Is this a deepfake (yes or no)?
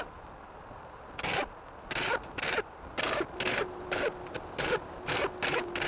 no